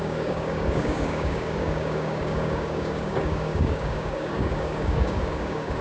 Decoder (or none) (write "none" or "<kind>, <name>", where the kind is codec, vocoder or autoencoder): codec, DAC